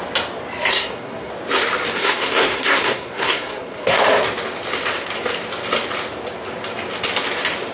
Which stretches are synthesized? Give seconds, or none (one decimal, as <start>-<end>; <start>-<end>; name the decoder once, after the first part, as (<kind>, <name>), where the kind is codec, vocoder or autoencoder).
0.7-1.3 (codec, SNAC); 2.0-4.0